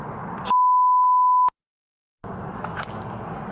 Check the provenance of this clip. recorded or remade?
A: recorded